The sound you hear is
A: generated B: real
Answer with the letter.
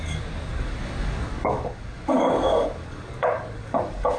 A